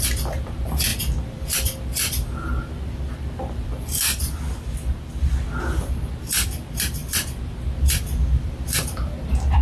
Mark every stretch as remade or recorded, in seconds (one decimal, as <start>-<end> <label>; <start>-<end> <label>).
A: 0.0-7.0 remade; 7.0-7.8 recorded; 7.8-9.6 remade